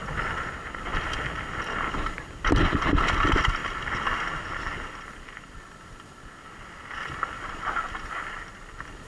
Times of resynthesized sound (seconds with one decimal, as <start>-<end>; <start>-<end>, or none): none

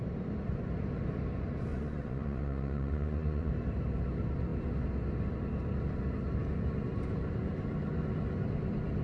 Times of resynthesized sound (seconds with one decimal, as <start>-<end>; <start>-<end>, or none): 1.7-3.5

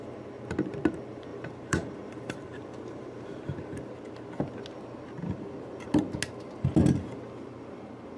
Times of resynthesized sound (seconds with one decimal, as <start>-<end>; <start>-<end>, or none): 1.3-3.9

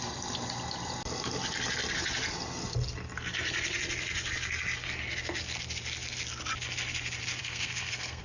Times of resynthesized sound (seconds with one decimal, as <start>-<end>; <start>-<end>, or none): 7.4-8.2